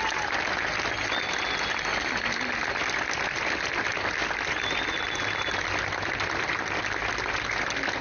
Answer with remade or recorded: recorded